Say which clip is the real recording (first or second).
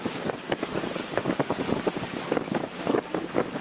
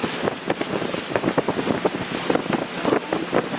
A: second